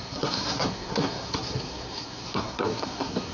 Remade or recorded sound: remade